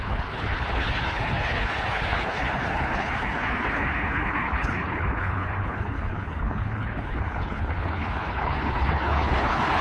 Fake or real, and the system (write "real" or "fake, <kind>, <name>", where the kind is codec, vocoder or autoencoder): fake, codec, HILCodec